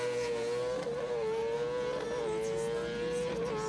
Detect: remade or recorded recorded